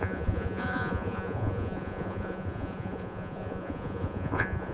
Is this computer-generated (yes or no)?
yes